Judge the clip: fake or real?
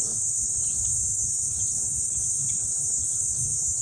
fake